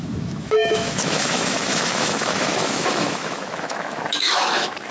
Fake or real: fake